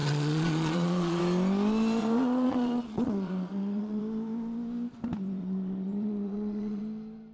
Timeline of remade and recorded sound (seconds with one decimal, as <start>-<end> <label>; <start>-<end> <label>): 0.0-1.2 remade; 1.2-2.0 recorded; 2.0-4.0 remade; 4.0-5.4 recorded; 5.4-6.8 remade; 6.8-7.3 recorded